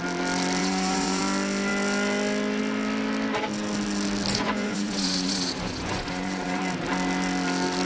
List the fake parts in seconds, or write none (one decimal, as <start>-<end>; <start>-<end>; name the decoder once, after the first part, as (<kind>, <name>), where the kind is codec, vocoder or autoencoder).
0.6-1.2 (vocoder, Vocos); 4.3-6.6